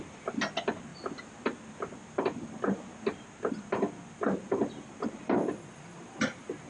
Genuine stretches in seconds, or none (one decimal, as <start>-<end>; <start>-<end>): 0.0-6.7